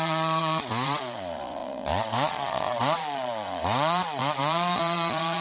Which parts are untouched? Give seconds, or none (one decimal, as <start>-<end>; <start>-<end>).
none